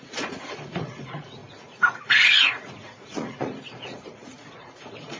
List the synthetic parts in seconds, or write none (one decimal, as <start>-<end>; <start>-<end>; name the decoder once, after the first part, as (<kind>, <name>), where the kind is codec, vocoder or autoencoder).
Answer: 0.0-5.2 (vocoder, Vocos)